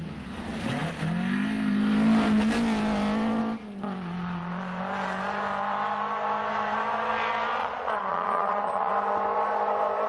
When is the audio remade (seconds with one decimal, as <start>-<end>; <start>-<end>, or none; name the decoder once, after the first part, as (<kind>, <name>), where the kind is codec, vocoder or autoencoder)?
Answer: 7.6-8.9 (vocoder, Vocos)